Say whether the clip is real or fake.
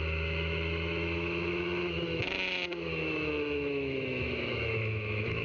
fake